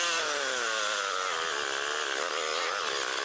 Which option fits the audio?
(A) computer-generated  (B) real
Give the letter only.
B